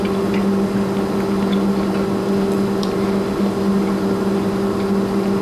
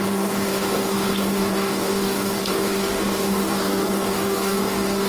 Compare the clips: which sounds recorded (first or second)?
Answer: first